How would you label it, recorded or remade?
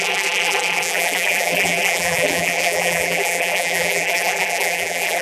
remade